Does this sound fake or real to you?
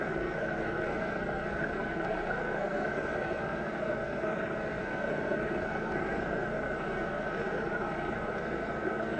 fake